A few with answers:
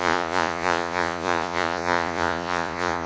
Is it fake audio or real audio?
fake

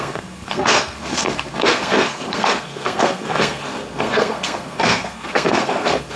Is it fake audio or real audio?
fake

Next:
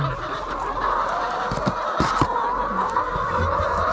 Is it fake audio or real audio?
real